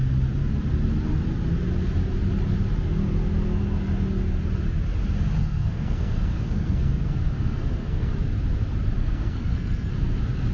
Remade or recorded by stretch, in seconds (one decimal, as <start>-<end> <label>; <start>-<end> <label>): 0.0-5.4 recorded; 5.4-8.1 remade; 8.1-9.0 recorded; 9.0-9.9 remade; 9.9-10.5 recorded